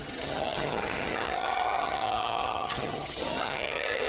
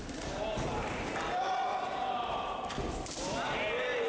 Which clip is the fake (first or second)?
first